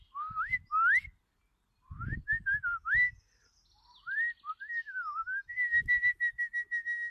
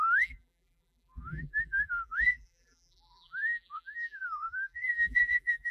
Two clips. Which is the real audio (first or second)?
first